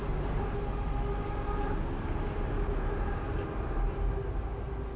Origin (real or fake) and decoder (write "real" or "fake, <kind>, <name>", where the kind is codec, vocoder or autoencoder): real